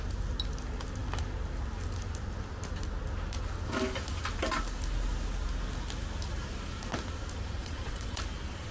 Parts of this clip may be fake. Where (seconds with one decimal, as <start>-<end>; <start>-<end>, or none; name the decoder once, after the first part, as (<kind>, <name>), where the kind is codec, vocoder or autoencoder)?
7.6-8.2 (vocoder, Vocos)